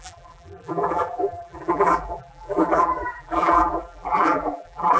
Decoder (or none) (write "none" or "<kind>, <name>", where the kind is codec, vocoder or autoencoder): vocoder, BigVGAN v2